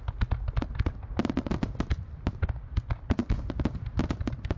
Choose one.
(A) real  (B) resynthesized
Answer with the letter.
A